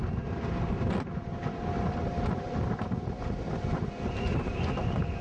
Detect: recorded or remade recorded